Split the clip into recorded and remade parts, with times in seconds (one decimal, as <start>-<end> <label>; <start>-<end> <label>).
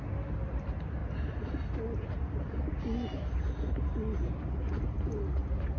0.0-5.8 recorded